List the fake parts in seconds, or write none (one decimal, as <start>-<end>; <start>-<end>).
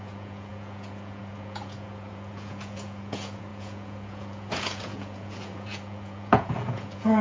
0.0-7.2